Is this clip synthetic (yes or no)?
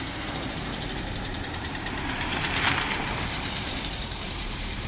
yes